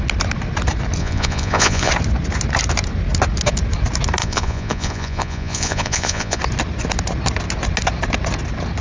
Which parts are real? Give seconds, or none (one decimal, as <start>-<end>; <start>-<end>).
0.0-1.0; 1.9-4.2; 6.4-8.8